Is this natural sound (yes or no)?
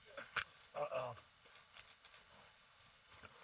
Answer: no